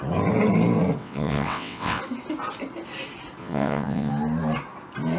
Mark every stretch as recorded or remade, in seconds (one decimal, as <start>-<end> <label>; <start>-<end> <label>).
0.0-1.0 recorded; 1.0-2.0 remade; 2.0-3.4 recorded; 3.4-4.1 remade; 4.1-5.2 recorded